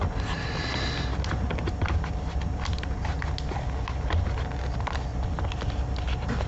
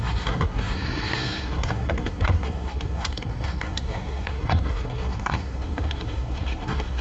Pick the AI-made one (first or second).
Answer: second